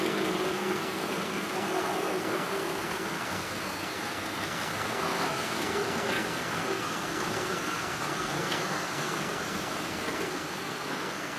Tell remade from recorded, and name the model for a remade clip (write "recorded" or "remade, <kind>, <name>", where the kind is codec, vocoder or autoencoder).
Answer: remade, codec, SNAC